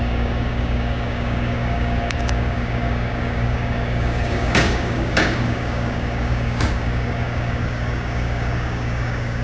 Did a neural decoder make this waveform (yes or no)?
yes